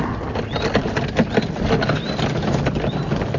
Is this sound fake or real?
real